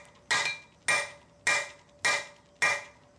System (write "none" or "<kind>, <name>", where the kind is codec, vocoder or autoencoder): none